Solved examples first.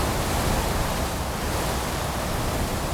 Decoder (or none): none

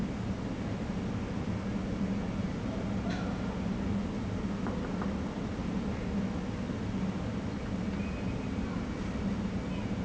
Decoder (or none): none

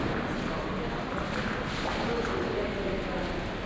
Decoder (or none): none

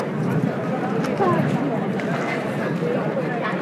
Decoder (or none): none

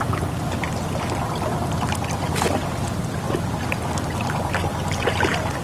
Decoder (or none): none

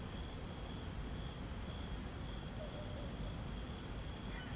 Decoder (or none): none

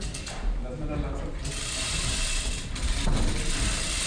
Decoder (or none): none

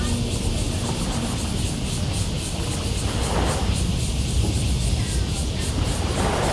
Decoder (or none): none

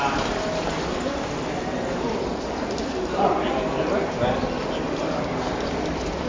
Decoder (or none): none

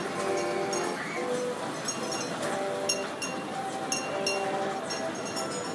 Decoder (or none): none